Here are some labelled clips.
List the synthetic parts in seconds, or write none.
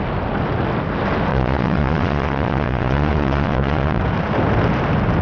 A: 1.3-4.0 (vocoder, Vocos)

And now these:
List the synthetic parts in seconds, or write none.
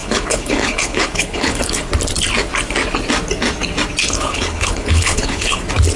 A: 0.0-1.8 (codec, HILCodec); 4.0-5.6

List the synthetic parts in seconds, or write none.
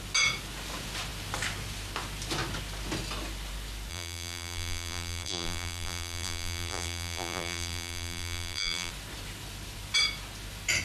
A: 3.9-8.9 (vocoder, BigVGAN v2)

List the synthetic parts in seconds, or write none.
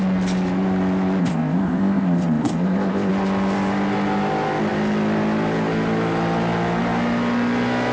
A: 1.2-3.1 (codec, ZipCodec)